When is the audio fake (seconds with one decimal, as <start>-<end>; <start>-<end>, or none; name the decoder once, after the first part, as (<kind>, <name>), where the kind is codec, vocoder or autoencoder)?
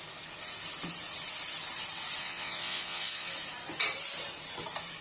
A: 2.2-3.3 (vocoder, Vocos)